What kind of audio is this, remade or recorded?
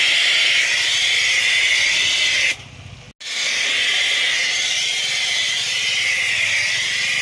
recorded